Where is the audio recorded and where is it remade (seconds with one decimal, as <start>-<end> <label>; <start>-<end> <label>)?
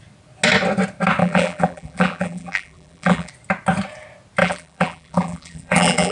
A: 0.0-1.2 recorded; 1.2-3.3 remade; 3.3-4.4 recorded; 4.4-6.1 remade